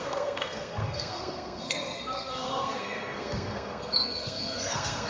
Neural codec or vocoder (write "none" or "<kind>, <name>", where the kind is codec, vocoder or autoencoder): codec, SNAC